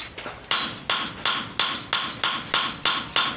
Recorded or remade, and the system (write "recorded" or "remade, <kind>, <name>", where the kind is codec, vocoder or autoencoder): recorded